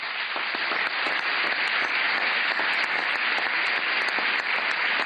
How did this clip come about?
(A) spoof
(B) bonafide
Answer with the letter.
B